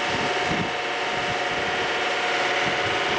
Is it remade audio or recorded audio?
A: recorded